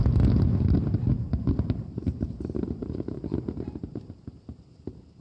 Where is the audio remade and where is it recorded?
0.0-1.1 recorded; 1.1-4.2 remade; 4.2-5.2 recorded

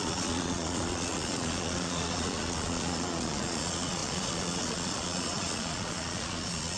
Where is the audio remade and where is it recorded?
0.0-6.8 remade

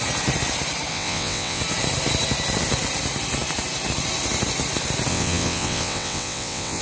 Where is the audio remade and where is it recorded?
0.0-0.9 recorded; 0.9-1.6 remade; 1.6-5.1 recorded; 5.1-6.8 remade

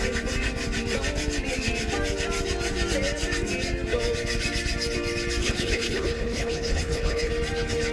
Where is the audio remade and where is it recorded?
0.0-5.4 recorded; 5.4-7.3 remade; 7.3-7.9 recorded

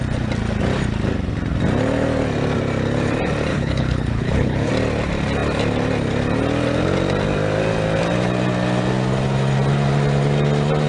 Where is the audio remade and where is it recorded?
0.0-3.5 recorded; 3.5-4.7 remade; 4.7-10.9 recorded

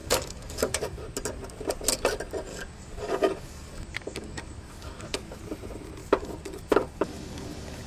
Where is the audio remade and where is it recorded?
0.0-1.0 remade; 1.0-2.5 recorded; 2.5-5.4 remade; 5.4-6.0 recorded; 6.0-7.9 remade

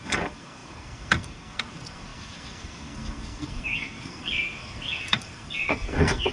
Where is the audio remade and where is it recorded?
0.0-6.3 remade